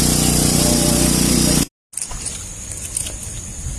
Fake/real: real